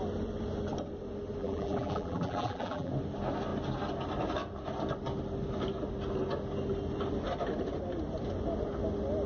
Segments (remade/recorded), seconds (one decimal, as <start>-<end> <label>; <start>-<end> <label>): 0.0-1.4 recorded; 1.4-2.9 remade; 2.9-9.3 recorded